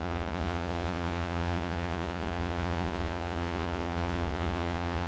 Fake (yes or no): yes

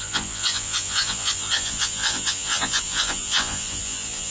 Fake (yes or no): yes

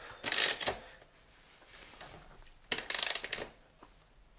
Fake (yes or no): no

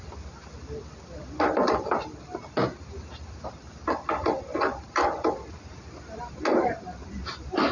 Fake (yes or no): no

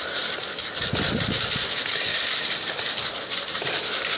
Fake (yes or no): no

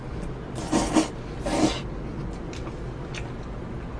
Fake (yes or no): no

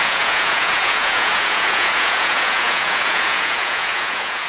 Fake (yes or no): yes